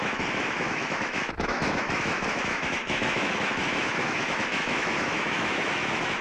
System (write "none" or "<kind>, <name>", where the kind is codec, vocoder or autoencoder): autoencoder, DAC-VAE